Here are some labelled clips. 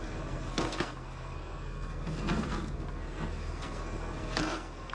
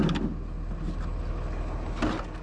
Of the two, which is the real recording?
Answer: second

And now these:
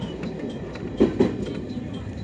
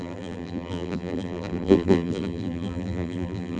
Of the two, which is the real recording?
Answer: first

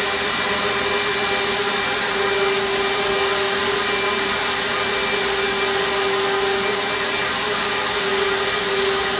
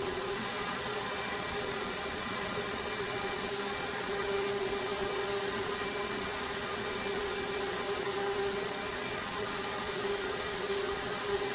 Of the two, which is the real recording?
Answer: first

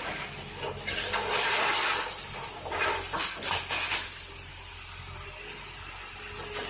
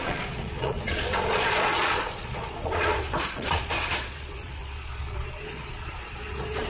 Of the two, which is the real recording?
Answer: first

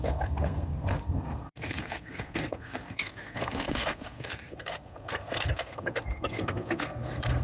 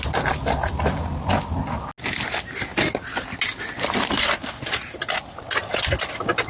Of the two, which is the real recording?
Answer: second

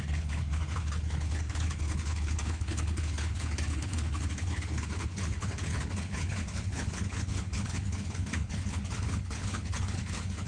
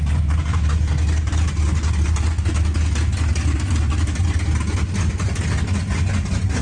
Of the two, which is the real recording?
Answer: second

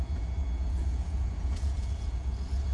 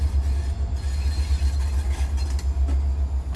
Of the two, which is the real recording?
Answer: second